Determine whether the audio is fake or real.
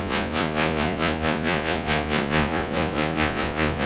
fake